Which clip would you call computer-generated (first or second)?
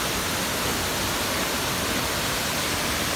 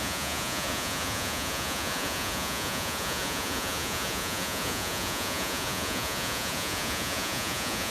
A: second